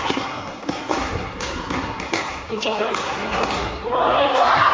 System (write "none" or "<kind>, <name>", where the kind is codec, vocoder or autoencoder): codec, SNAC